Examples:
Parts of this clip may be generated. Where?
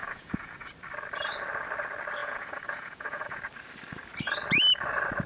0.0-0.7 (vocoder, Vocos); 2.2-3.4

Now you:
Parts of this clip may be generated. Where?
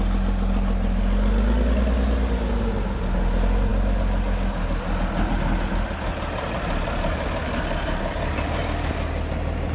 none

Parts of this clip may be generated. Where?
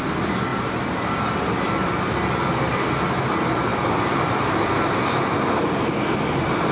none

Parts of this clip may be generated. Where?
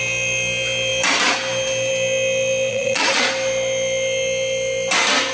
2.7-3.3 (vocoder, Vocos)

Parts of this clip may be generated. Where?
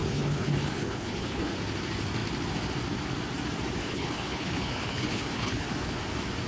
0.0-1.6 (codec, HILCodec); 3.8-6.0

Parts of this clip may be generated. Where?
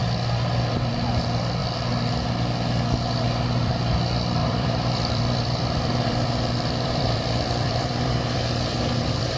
4.4-9.4 (vocoder, BigVGAN v2)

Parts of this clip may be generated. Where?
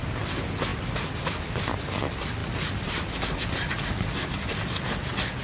none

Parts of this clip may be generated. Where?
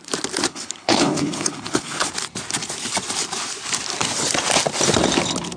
0.5-2.1 (codec, HILCodec)